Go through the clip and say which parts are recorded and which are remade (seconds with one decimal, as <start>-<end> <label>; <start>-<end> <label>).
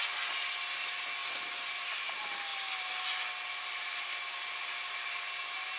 0.0-1.2 recorded; 1.2-1.7 remade; 1.7-5.8 recorded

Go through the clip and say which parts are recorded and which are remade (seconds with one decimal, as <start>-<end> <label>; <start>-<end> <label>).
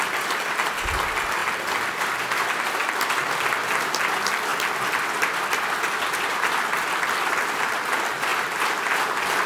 0.0-4.5 remade; 4.5-5.1 recorded; 5.1-9.5 remade